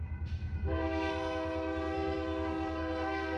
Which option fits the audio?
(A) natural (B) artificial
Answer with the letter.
B